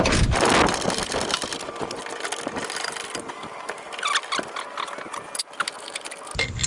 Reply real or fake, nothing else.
real